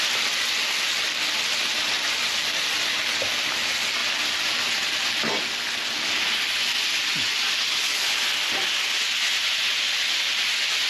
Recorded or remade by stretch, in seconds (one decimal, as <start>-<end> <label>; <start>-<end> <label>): 0.0-10.9 recorded

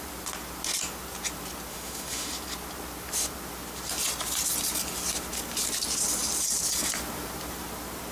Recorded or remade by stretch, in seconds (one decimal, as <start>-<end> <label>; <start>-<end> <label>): 0.0-1.7 recorded; 1.7-2.3 remade; 2.3-8.1 recorded

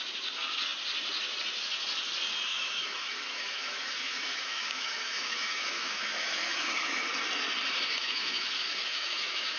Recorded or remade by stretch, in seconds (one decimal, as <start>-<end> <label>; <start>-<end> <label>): 0.0-2.5 recorded; 2.5-7.1 remade; 7.1-8.0 recorded; 8.0-9.6 remade

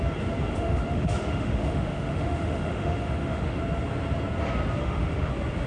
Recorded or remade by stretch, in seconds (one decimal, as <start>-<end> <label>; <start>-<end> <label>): 0.0-0.5 recorded; 0.5-3.6 remade; 3.6-4.8 recorded; 4.8-5.3 remade; 5.3-5.7 recorded

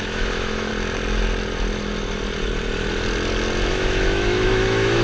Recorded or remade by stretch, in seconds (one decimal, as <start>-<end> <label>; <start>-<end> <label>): 0.0-0.7 remade; 0.7-3.7 recorded; 3.7-5.0 remade

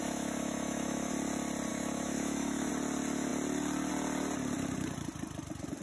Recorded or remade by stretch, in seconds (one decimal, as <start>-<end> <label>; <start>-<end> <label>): 0.0-1.1 remade; 1.1-1.7 recorded; 1.7-2.7 remade; 2.7-5.8 recorded